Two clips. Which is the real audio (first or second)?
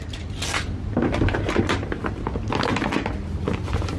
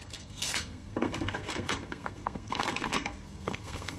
first